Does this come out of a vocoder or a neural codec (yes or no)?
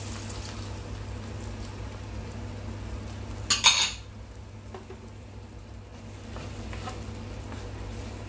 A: no